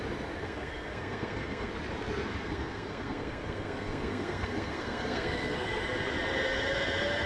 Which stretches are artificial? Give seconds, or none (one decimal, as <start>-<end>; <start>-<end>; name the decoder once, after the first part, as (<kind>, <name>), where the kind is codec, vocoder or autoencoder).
0.4-1.7 (codec, SNAC); 2.3-5.8